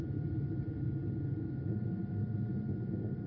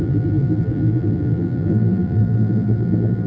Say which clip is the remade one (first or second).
second